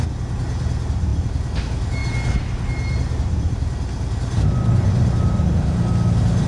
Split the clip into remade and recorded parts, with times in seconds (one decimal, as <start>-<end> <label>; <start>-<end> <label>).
0.0-6.5 recorded